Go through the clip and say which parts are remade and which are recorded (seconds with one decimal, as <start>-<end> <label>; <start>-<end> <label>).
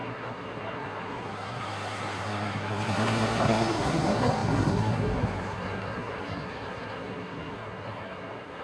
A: 0.0-8.6 remade